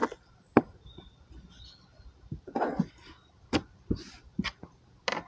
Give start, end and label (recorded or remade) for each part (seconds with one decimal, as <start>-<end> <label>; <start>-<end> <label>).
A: 0.0-5.3 recorded